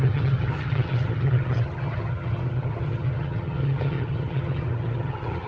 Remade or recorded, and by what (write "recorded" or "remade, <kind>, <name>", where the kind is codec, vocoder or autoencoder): remade, vocoder, HiFi-GAN